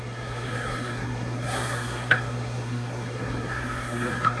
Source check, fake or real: fake